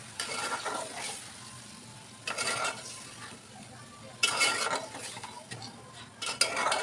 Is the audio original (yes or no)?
yes